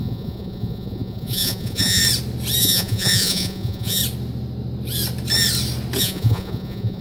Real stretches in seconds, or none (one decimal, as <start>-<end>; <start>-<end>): 2.0-2.6; 4.0-6.0